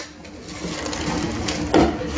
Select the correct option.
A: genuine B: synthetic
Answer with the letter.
A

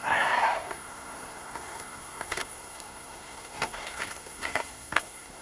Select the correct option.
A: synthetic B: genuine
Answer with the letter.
A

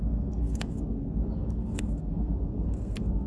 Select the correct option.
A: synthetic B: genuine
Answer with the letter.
A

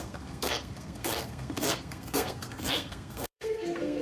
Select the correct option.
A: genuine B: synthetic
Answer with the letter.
B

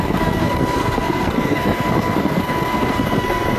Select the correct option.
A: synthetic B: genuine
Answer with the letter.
A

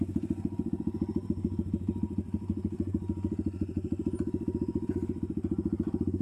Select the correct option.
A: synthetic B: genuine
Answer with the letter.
B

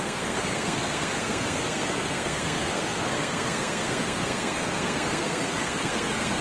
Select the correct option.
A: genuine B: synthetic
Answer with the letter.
B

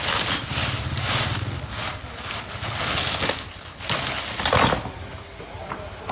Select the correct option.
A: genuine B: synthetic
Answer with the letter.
A